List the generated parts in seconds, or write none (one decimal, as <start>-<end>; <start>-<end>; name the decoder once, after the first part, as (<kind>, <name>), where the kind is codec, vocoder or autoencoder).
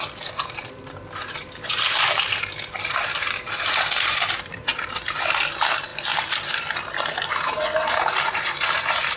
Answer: 0.0-9.2 (vocoder, BigVGAN v2)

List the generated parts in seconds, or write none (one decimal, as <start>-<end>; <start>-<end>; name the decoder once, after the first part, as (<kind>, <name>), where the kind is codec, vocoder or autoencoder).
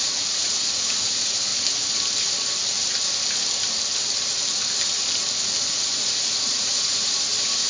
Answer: 0.0-1.5 (vocoder, Vocos); 5.6-7.7